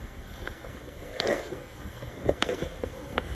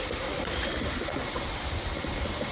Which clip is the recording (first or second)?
second